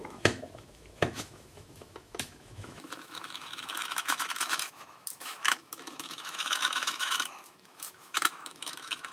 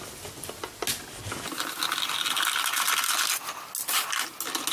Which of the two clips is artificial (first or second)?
first